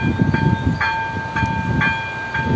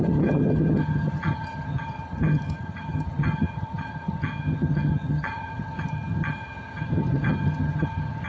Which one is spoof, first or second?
second